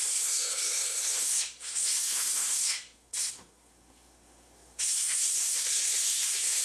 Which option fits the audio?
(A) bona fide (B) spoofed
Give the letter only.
B